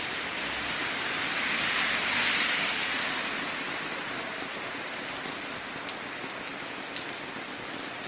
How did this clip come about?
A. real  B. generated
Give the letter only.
A